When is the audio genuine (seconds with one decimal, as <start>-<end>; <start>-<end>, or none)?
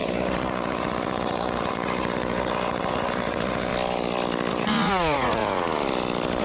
3.7-4.5; 5.4-6.4